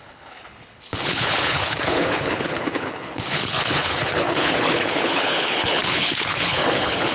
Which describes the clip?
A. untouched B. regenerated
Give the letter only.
B